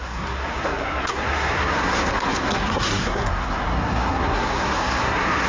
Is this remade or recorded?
remade